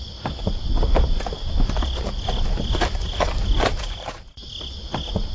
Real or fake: real